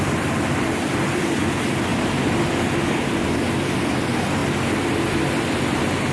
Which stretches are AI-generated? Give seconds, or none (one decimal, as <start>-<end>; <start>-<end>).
1.9-2.4